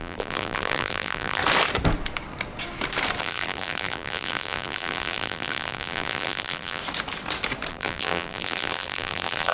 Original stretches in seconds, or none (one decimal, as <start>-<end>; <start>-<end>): 1.4-3.2; 6.8-7.7